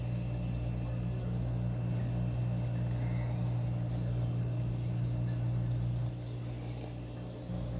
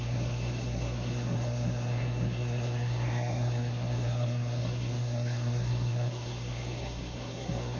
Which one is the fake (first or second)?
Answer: second